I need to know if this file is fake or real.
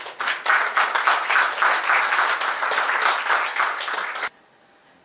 real